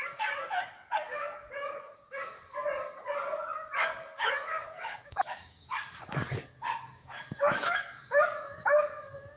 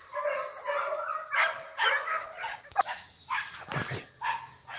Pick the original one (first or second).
second